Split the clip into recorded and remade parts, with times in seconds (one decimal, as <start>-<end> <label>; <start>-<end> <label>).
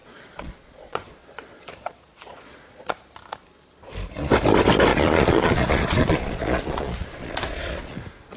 0.0-2.8 remade; 2.8-4.9 recorded; 4.9-8.0 remade; 8.0-8.4 recorded